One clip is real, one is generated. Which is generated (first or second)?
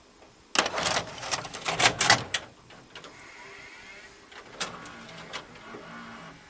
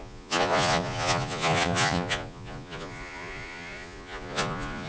second